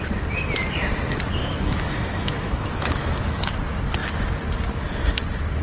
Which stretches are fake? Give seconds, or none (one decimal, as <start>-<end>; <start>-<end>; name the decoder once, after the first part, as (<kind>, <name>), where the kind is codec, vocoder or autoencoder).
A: 1.4-3.5 (autoencoder, DAC-VAE)